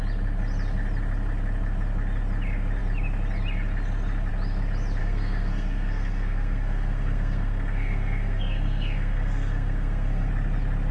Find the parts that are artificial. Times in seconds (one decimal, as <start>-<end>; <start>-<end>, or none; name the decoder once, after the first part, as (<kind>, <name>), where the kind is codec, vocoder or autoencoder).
5.0-10.3 (codec, SNAC)